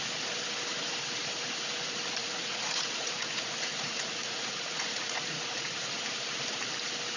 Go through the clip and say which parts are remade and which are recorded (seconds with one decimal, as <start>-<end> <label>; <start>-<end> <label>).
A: 0.0-2.2 recorded; 2.2-5.8 remade; 5.8-7.2 recorded